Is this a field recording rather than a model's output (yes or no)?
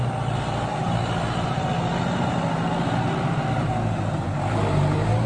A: no